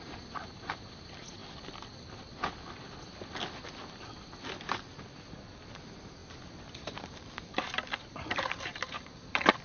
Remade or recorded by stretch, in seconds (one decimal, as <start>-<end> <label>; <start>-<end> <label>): 0.0-1.4 remade; 1.4-5.8 recorded; 5.8-6.2 remade; 6.2-6.7 recorded; 6.7-9.6 remade